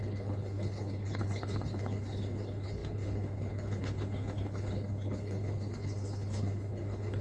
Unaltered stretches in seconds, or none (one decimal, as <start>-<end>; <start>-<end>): none